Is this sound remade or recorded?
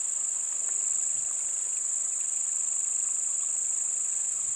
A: recorded